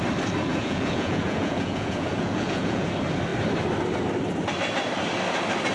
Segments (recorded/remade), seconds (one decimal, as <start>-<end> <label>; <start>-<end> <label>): 0.0-0.5 recorded; 0.5-2.9 remade; 2.9-5.7 recorded